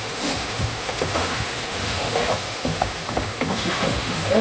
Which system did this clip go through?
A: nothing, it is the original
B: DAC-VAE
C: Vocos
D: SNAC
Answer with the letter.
B